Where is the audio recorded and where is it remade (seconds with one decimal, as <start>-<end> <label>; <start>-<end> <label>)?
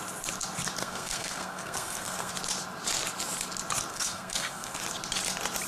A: 0.0-0.8 recorded; 0.8-2.3 remade; 2.3-3.9 recorded; 3.9-4.8 remade; 4.8-5.7 recorded